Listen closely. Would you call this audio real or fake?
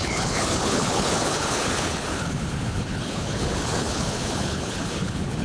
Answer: fake